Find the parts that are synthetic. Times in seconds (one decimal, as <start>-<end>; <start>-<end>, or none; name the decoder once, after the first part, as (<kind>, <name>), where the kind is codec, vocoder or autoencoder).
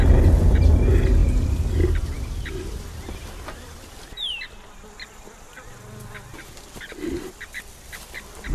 1.2-4.9 (vocoder, BigVGAN v2)